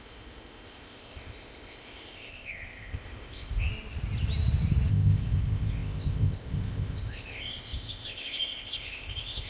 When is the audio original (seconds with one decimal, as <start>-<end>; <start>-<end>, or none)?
3.7-4.9